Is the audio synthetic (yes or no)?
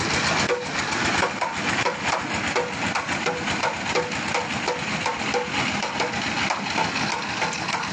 no